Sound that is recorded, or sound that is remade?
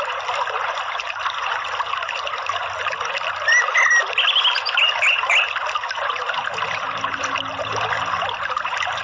recorded